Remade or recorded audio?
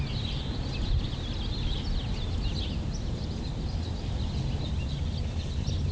recorded